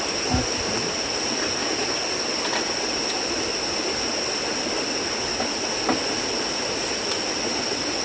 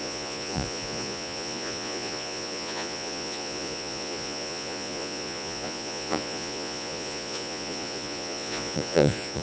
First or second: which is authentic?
first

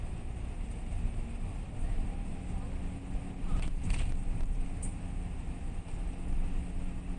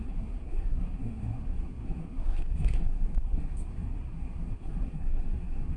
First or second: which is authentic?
first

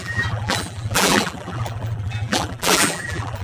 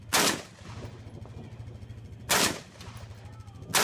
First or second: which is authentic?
second